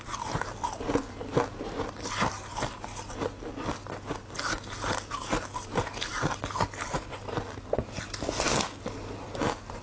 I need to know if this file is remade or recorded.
recorded